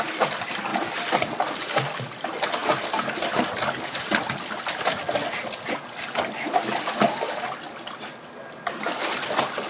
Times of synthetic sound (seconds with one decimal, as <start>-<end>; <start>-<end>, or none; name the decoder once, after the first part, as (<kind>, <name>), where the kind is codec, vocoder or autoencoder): none